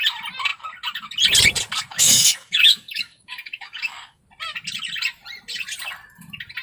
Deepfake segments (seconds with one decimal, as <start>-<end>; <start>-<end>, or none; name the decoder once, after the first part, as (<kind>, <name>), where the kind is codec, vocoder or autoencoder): 1.9-4.2 (codec, DAC)